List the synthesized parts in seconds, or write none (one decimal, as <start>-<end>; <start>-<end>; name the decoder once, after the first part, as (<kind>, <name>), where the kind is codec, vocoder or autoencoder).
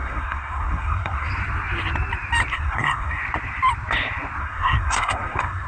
0.0-1.3 (codec, SNAC); 2.5-3.2; 4.4-5.7